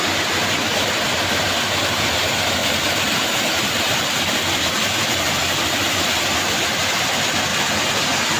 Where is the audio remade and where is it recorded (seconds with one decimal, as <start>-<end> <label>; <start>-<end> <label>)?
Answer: 0.0-8.4 recorded